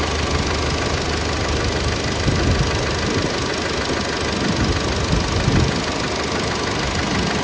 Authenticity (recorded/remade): recorded